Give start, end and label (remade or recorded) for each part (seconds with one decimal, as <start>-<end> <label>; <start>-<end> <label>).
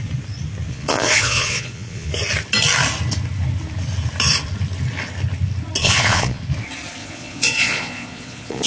0.0-0.7 recorded; 0.7-2.1 remade; 2.1-5.8 recorded; 5.8-6.4 remade; 6.4-7.0 recorded; 7.0-8.7 remade